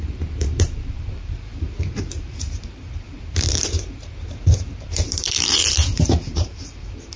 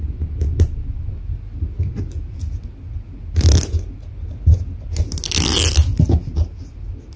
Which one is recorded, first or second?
second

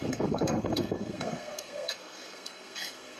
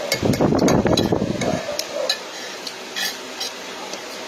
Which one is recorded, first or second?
second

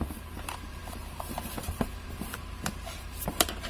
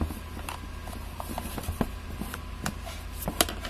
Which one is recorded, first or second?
second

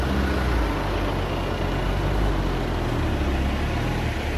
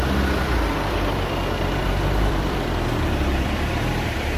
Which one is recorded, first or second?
first